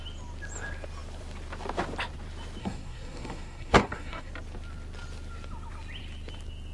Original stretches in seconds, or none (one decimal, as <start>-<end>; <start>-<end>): 0.0-2.6; 4.3-6.7